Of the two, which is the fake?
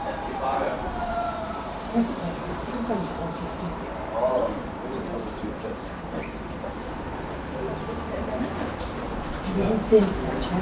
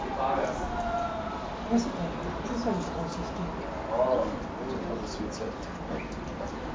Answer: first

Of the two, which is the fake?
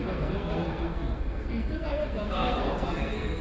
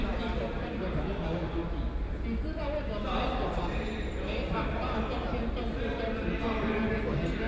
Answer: first